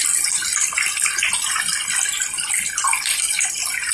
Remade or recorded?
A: recorded